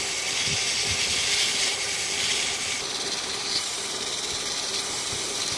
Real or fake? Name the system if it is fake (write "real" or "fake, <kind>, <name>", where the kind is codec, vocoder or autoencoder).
fake, vocoder, BigVGAN v2